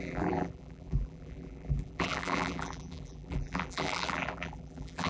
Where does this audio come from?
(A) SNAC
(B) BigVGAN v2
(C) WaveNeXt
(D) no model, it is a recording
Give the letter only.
B